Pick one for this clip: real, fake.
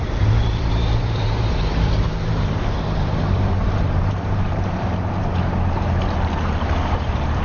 fake